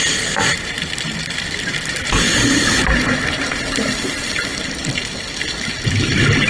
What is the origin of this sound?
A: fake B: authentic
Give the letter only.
B